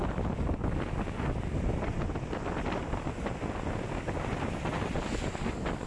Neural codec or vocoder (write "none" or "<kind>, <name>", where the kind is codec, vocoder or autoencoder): none